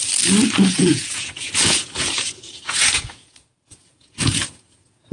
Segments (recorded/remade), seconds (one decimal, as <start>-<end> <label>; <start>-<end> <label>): 0.0-0.7 recorded; 0.7-5.1 remade